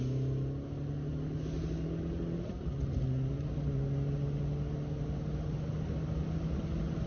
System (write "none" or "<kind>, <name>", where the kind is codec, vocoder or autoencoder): none